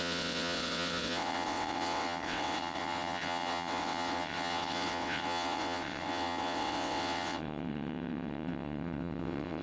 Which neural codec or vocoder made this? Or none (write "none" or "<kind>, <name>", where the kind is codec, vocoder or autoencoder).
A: vocoder, WaveNeXt